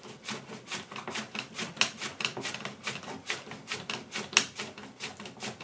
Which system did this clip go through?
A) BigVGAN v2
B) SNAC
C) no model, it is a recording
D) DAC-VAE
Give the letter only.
C